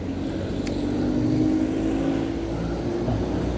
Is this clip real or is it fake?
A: real